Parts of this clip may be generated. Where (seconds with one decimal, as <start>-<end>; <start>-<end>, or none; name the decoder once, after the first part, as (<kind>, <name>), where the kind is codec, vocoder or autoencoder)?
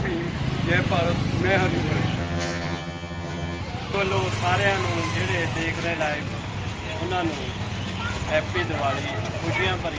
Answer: 2.2-3.6 (vocoder, HiFi-GAN)